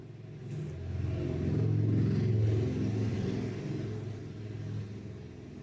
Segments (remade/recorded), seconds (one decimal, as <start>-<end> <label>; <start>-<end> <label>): 0.0-3.1 recorded; 3.1-4.2 remade; 4.2-5.6 recorded